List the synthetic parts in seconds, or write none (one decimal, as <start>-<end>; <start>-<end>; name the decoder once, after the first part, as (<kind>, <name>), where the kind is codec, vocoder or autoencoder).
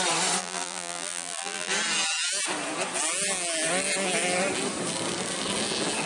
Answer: 0.4-1.7 (vocoder, BigVGAN v2)